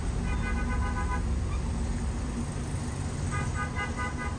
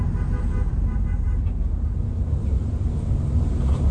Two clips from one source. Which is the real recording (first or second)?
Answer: first